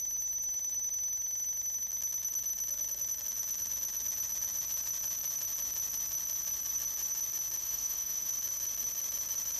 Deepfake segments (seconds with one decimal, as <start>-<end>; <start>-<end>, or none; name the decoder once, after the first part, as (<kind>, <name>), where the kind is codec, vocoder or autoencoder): 7.6-8.3 (autoencoder, DAC-VAE)